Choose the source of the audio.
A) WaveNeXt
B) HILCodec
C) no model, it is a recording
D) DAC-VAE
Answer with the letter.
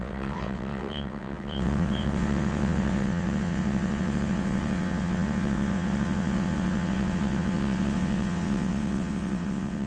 A